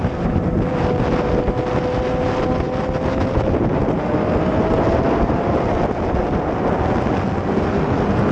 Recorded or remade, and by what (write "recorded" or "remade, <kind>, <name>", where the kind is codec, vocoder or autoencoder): recorded